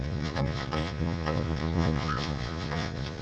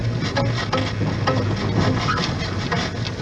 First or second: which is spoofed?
first